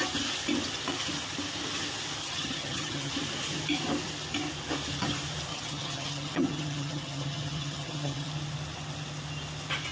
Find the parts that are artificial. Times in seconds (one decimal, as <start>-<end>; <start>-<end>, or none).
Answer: 2.2-3.1; 5.5-8.3

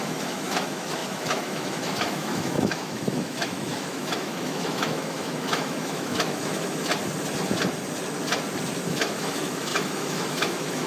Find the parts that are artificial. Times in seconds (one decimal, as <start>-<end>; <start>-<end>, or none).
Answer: 0.0-6.9; 8.9-10.9

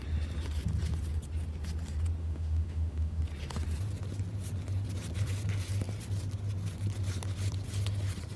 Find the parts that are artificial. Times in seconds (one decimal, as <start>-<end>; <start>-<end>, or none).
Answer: 2.2-3.2

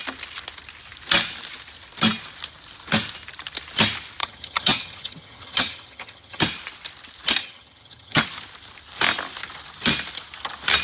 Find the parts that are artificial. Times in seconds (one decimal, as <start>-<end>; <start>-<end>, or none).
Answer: 4.2-6.4; 7.4-8.2

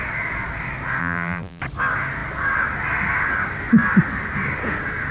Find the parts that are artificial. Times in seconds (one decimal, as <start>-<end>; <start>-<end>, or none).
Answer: 1.0-1.6

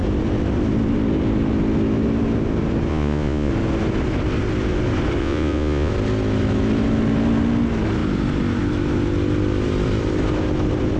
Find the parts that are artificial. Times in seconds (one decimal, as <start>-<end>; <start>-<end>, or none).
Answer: 2.9-3.5; 5.2-5.9

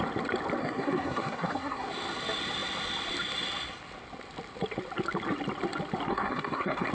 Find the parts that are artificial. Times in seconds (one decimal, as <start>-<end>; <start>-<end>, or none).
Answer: 0.6-1.9; 6.1-6.9

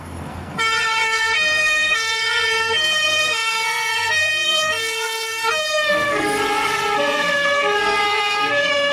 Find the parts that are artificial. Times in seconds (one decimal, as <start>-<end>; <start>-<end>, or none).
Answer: 0.0-8.9